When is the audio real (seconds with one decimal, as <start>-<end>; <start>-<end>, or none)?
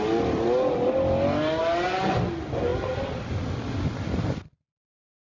0.0-5.3